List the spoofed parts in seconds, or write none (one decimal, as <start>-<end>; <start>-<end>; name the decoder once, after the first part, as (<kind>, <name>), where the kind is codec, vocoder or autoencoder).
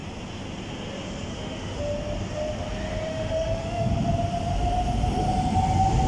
1.3-1.8 (autoencoder, DAC-VAE); 3.1-3.9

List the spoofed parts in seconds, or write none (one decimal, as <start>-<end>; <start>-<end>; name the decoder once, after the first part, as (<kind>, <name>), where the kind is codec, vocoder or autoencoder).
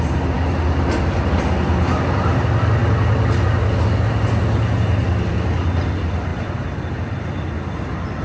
0.0-2.8 (vocoder, BigVGAN v2); 4.2-8.2